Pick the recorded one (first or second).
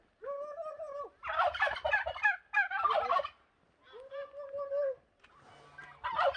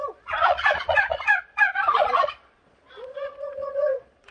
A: first